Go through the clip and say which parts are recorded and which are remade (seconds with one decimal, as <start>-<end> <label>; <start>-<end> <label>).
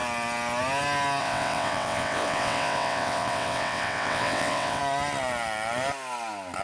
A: 0.0-1.2 recorded; 1.2-4.8 remade; 4.8-6.6 recorded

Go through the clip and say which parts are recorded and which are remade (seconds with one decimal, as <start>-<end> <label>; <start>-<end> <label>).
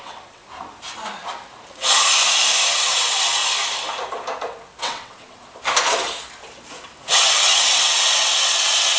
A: 0.0-0.4 remade; 0.4-2.7 recorded; 2.7-3.4 remade; 3.4-4.8 recorded; 4.8-5.4 remade; 5.4-7.1 recorded; 7.1-9.0 remade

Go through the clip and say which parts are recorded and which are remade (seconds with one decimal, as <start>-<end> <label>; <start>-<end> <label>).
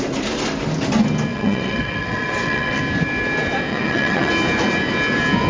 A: 0.0-1.3 recorded; 1.3-2.8 remade; 2.8-3.7 recorded; 3.7-4.3 remade; 4.3-5.5 recorded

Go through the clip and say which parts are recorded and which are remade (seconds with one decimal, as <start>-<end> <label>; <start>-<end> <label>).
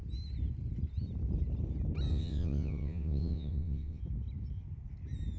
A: 0.0-2.1 recorded; 2.1-4.0 remade; 4.0-5.4 recorded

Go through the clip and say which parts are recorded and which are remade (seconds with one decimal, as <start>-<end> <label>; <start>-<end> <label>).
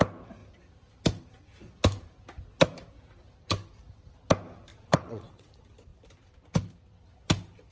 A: 0.0-4.7 recorded; 4.7-5.5 remade; 5.5-7.7 recorded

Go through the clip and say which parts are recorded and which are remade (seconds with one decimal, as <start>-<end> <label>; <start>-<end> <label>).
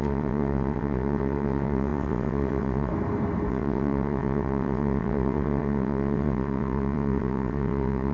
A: 0.0-2.9 remade; 2.9-3.5 recorded; 3.5-8.1 remade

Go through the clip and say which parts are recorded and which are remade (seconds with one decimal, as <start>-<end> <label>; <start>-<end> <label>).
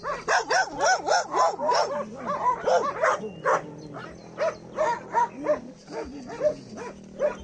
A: 0.0-7.4 recorded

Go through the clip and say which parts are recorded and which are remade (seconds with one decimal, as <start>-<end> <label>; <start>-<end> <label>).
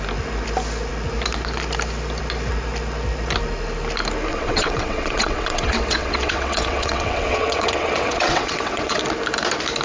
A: 0.0-4.3 recorded; 4.3-9.0 remade; 9.0-9.8 recorded